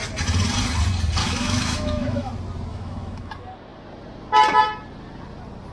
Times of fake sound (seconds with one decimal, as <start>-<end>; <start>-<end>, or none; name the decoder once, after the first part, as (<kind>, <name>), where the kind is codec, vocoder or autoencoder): 1.2-2.3 (autoencoder, DAC-VAE); 2.7-3.3